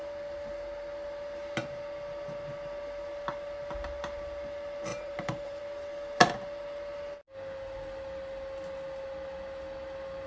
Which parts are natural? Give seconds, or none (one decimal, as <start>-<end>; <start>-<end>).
0.0-4.9; 5.6-10.3

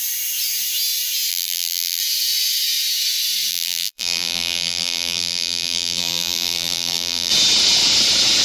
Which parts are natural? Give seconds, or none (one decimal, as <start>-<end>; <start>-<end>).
0.0-1.3; 2.0-3.5; 7.3-8.4

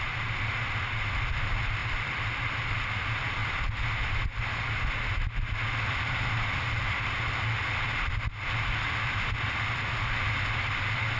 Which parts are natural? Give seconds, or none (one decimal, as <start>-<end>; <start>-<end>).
0.0-1.8; 2.5-11.2

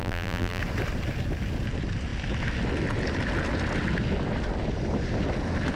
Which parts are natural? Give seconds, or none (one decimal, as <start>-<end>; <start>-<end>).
0.6-5.8

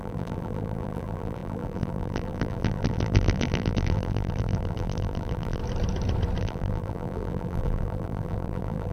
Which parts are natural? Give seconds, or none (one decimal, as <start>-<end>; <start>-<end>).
5.6-6.4

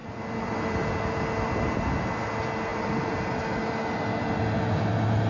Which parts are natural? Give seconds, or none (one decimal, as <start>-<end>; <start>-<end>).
1.2-2.7; 3.4-5.3

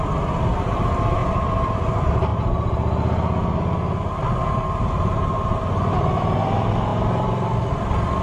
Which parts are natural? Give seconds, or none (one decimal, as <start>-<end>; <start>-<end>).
2.3-4.8